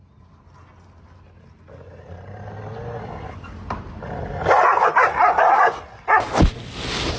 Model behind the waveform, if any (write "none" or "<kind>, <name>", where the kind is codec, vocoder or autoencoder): none